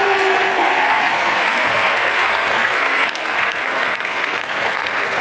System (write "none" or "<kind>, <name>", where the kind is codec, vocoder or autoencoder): codec, SNAC